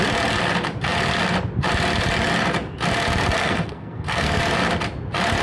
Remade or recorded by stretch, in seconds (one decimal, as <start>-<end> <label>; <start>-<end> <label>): 0.0-3.4 recorded; 3.4-4.4 remade; 4.4-5.4 recorded